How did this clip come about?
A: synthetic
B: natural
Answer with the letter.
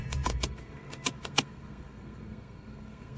A